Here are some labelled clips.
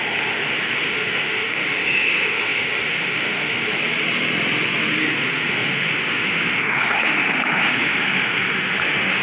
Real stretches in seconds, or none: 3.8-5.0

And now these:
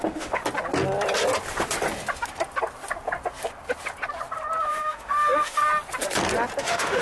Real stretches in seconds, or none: 0.4-4.6; 5.6-6.6

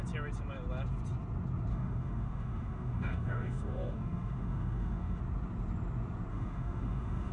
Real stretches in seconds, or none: 0.0-1.7; 5.2-6.3

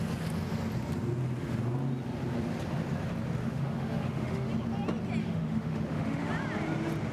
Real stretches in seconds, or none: 0.0-3.4; 4.5-5.2; 6.3-7.1

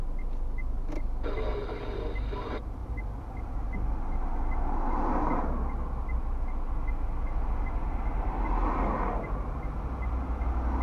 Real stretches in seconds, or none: 0.0-10.8

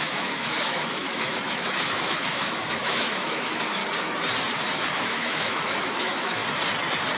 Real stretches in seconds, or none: 3.8-4.9; 6.4-7.2